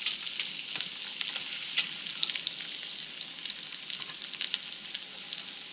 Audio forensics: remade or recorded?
recorded